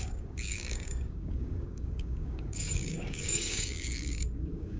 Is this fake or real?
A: fake